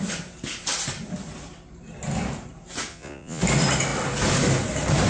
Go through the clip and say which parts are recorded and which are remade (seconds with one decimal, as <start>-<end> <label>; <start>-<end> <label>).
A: 0.0-2.9 recorded; 2.9-3.4 remade; 3.4-5.1 recorded